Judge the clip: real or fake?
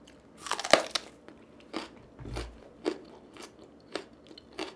real